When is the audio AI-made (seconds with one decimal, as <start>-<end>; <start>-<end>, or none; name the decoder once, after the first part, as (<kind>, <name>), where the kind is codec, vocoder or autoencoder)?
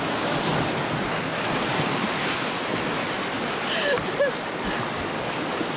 none